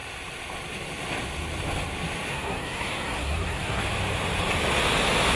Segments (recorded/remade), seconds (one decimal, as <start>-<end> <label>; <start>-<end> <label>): 0.0-2.3 recorded; 2.3-3.8 remade; 3.8-5.4 recorded